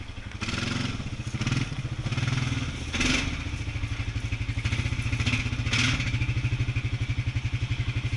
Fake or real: real